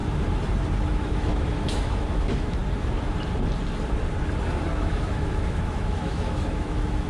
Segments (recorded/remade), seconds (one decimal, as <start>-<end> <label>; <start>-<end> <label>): 0.0-0.9 recorded; 0.9-2.6 remade; 2.6-4.7 recorded; 4.7-7.1 remade